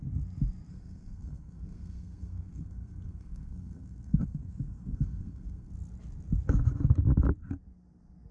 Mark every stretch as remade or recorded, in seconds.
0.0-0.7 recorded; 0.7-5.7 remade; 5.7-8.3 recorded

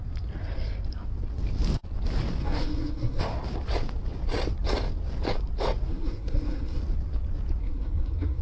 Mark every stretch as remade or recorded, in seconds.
0.0-2.4 recorded; 2.4-3.2 remade; 3.2-5.9 recorded; 5.9-6.8 remade; 6.8-7.6 recorded; 7.6-8.4 remade

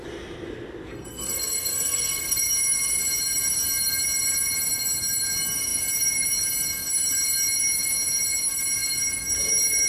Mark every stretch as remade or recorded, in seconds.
0.0-0.9 recorded; 0.9-2.4 remade; 2.4-9.9 recorded

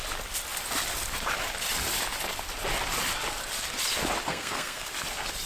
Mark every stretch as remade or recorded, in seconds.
0.0-4.3 recorded; 4.3-4.9 remade; 4.9-5.5 recorded

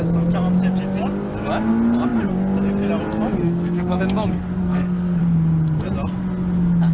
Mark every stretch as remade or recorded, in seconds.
0.0-3.4 recorded; 3.4-4.0 remade; 4.0-4.6 recorded; 4.6-5.2 remade; 5.2-6.9 recorded

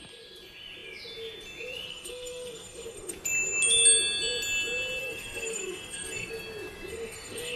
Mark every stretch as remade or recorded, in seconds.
0.0-1.9 recorded; 1.9-3.1 remade; 3.1-5.0 recorded; 5.0-6.3 remade; 6.3-6.9 recorded; 6.9-7.6 remade